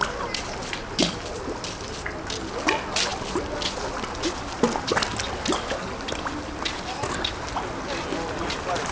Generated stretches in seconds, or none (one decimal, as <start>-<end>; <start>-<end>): none